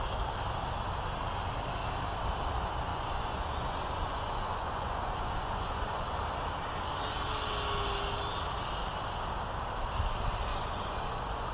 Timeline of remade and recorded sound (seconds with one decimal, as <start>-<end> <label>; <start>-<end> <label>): 0.0-2.9 recorded; 2.9-6.2 remade; 6.2-10.5 recorded; 10.5-11.5 remade